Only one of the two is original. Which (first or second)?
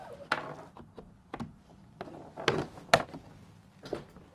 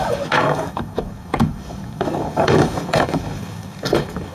first